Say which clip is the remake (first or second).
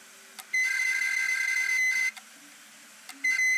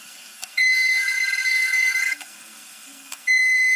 second